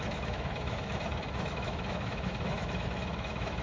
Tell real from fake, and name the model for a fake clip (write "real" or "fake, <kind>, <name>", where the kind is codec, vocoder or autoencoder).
fake, autoencoder, DAC-VAE